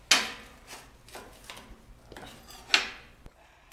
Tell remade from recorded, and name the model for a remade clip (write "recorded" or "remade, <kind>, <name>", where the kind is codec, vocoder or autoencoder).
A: recorded